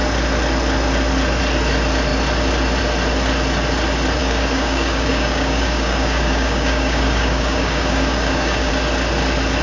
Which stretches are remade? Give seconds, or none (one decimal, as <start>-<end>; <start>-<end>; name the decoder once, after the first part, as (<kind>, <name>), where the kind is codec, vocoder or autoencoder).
4.2-8.7 (codec, DAC)